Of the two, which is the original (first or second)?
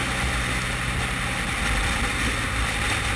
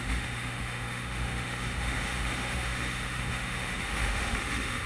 first